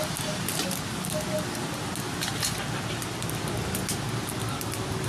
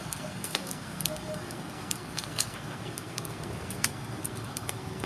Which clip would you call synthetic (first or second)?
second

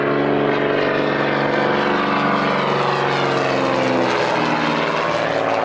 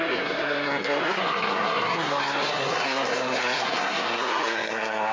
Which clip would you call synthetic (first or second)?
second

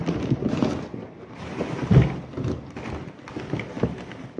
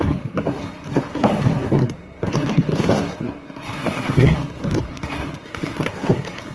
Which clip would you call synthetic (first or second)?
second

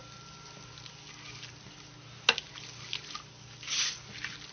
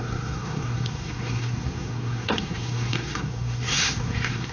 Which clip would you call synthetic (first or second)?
second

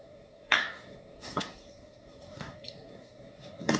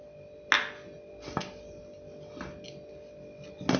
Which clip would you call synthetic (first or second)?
first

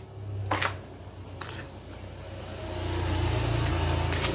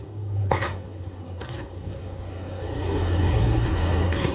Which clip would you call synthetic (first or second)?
second